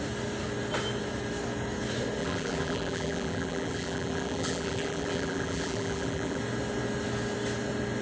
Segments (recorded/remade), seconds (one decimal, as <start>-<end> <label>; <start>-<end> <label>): 0.0-2.2 recorded; 2.2-6.4 remade; 6.4-8.0 recorded